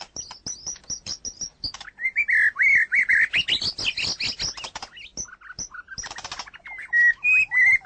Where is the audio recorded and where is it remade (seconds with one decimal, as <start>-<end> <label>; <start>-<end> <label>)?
0.0-7.9 recorded